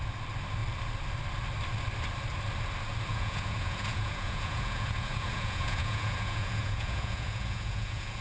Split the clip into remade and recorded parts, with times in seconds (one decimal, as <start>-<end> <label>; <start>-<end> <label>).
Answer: 0.0-3.1 recorded; 3.1-8.2 remade